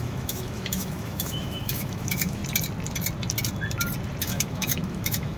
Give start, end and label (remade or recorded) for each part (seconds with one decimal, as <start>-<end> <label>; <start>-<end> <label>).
0.0-2.4 remade; 2.4-4.2 recorded; 4.2-5.4 remade